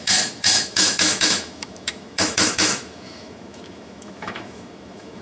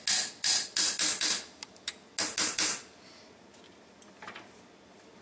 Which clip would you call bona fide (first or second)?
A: second